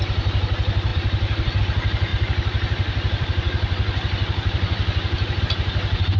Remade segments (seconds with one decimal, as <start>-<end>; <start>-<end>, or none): 0.9-1.6; 2.1-5.4